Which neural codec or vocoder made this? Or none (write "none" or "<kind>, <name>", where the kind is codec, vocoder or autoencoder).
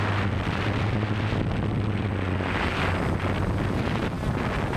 none